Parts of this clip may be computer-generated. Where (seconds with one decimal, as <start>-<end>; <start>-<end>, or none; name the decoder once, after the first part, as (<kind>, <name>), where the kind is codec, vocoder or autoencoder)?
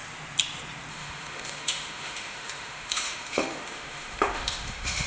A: 0.9-5.1 (autoencoder, DAC-VAE)